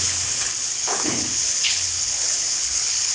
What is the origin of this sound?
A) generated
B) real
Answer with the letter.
A